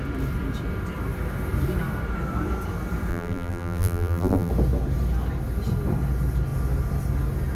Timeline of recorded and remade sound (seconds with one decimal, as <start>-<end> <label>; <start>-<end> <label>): 0.0-3.1 recorded; 3.1-4.5 remade; 4.5-7.5 recorded